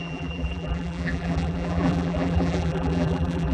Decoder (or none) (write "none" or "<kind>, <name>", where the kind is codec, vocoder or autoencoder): vocoder, BigVGAN v2